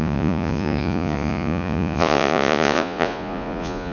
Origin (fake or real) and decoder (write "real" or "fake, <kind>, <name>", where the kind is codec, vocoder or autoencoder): fake, vocoder, Vocos